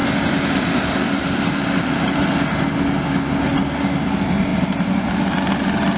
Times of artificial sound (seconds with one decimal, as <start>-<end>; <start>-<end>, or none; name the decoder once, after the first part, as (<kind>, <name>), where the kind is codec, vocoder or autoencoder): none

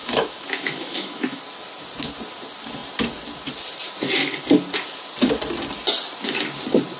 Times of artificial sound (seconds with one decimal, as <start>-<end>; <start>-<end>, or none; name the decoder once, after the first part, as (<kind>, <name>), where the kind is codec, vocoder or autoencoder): 0.0-1.4 (autoencoder, DAC-VAE)

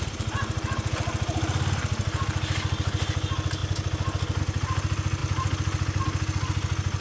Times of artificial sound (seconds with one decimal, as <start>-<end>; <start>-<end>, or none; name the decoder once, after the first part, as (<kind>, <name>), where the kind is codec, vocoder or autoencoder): none

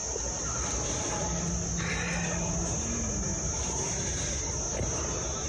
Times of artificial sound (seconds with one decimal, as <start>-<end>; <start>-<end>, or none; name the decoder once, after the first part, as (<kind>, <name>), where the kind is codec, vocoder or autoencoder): none

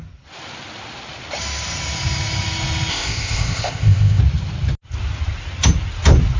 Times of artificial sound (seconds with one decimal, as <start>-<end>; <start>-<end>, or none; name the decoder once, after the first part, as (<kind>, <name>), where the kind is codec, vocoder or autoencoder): 2.9-4.2 (codec, ZipCodec)

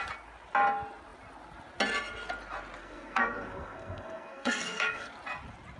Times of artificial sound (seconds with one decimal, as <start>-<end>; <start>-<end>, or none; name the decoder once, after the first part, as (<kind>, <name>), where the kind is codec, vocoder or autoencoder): 2.8-5.1 (codec, SNAC)